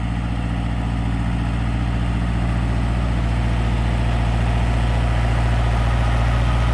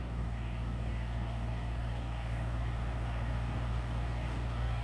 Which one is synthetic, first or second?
second